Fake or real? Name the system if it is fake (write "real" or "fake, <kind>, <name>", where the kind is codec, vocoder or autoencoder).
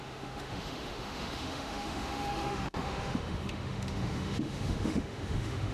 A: fake, autoencoder, DAC-VAE